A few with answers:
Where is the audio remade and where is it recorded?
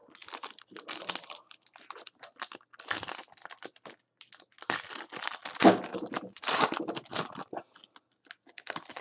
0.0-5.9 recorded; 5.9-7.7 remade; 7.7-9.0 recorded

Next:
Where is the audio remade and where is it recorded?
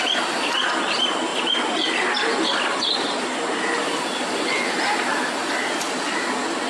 0.0-1.3 recorded; 1.3-5.3 remade; 5.3-6.7 recorded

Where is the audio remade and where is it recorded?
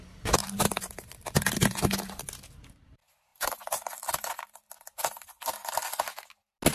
0.0-0.4 recorded; 0.4-1.1 remade; 1.1-6.7 recorded